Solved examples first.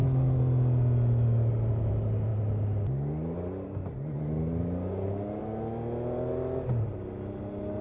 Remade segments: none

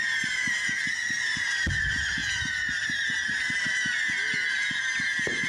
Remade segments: none

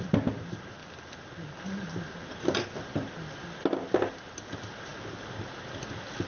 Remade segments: 0.0-2.9 (vocoder, BigVGAN v2); 4.1-6.3

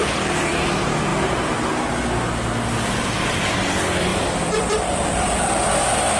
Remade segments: 1.1-1.7 (vocoder, BigVGAN v2); 4.1-5.4

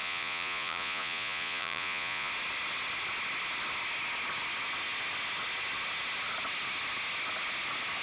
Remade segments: 0.0-2.3 (vocoder, Vocos)

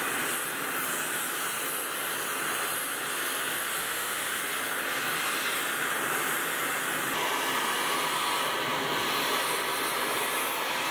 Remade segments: 3.8-4.4 (autoencoder, DAC-VAE)

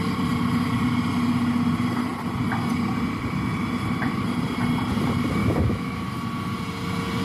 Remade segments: 5.4-6.1 (autoencoder, DAC-VAE)

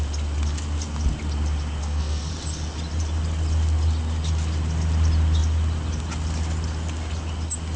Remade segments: 1.8-2.3 (codec, SNAC)